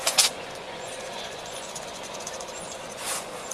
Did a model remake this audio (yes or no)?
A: yes